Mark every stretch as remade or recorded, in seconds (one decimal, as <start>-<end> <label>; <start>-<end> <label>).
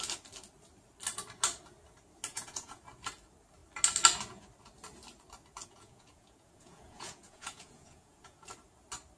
0.0-2.3 recorded; 2.3-2.8 remade; 2.8-5.6 recorded; 5.6-8.5 remade; 8.5-9.2 recorded